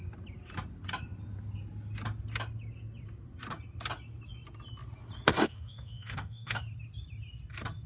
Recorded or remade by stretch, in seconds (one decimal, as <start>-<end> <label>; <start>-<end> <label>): 0.0-5.4 recorded; 5.4-6.6 remade; 6.6-7.9 recorded

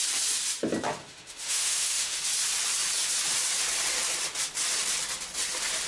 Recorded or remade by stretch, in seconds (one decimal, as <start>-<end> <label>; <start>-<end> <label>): 0.0-1.0 recorded; 1.0-2.2 remade; 2.2-5.9 recorded